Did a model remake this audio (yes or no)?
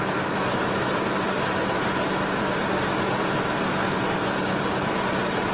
no